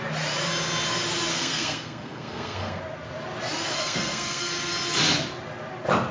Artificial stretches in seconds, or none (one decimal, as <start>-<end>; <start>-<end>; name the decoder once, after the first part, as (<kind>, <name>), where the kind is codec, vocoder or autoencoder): 1.3-2.8 (codec, SNAC); 3.7-4.5